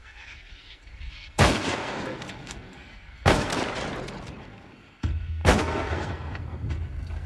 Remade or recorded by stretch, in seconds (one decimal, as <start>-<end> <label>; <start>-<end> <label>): 0.0-3.5 remade; 3.5-4.4 recorded; 4.4-7.3 remade